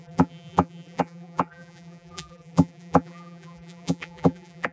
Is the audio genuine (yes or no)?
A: no